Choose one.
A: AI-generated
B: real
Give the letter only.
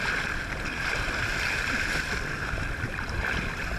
A